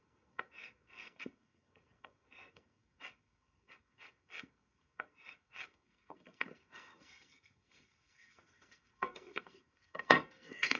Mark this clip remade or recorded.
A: remade